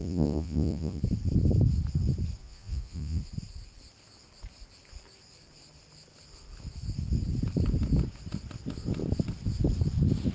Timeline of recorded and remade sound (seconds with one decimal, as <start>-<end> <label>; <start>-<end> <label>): 0.0-1.0 remade; 1.0-2.4 recorded; 2.4-3.2 remade; 3.2-10.3 recorded